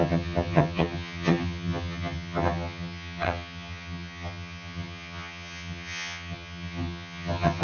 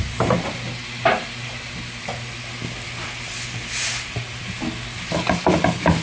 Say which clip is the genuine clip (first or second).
second